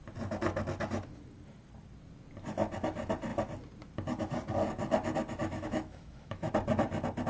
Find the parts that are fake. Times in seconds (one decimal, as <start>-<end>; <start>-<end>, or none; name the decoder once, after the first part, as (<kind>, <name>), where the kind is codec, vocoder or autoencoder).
5.4-6.5 (autoencoder, DAC-VAE)